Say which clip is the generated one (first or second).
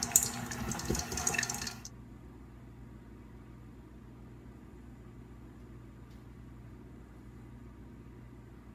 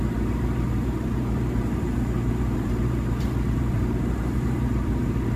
second